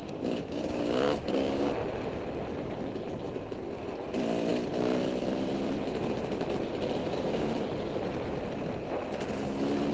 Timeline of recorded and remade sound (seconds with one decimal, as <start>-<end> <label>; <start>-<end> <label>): 0.0-1.7 remade; 1.7-7.0 recorded; 7.0-7.5 remade; 7.5-9.9 recorded